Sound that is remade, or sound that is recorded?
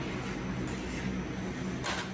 recorded